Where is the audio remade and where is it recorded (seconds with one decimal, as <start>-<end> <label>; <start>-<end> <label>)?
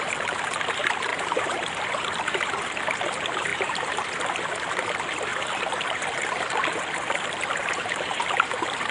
0.0-1.1 recorded; 1.1-2.5 remade; 2.5-3.5 recorded; 3.5-4.2 remade; 4.2-7.6 recorded; 7.6-8.2 remade; 8.2-8.9 recorded